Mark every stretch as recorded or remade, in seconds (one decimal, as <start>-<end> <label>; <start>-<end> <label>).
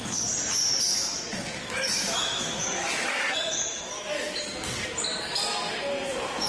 0.0-0.9 recorded; 0.9-4.4 remade; 4.4-6.5 recorded